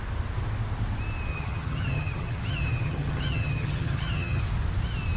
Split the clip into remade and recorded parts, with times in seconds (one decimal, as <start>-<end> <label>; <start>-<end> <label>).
0.0-1.3 recorded; 1.3-4.4 remade; 4.4-5.2 recorded